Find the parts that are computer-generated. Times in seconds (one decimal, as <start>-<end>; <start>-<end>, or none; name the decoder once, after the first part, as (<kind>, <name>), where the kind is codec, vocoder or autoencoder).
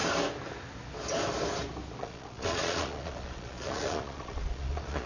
2.0-5.1 (vocoder, Vocos)